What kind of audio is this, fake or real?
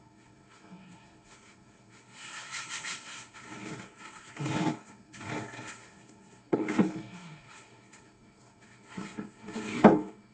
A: fake